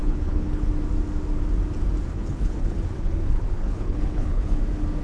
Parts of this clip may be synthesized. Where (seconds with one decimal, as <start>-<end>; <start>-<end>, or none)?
0.0-0.7; 2.1-4.6

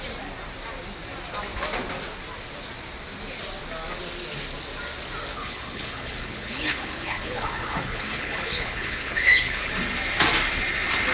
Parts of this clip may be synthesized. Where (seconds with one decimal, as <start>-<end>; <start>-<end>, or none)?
5.3-9.7